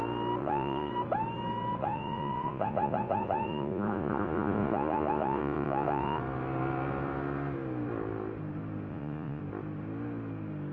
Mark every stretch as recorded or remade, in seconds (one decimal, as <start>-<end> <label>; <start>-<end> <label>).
0.0-0.4 recorded; 0.4-0.9 remade; 0.9-1.8 recorded; 1.8-6.2 remade; 6.2-8.9 recorded; 8.9-9.4 remade; 9.4-10.7 recorded